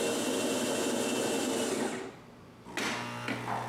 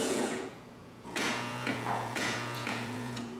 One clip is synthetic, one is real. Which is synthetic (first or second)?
second